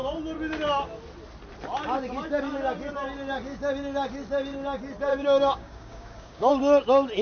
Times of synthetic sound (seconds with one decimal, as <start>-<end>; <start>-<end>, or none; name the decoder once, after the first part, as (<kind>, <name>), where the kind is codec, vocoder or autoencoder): 5.1-6.5 (codec, DAC)